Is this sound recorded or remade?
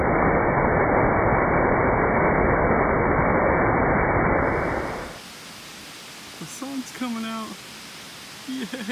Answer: recorded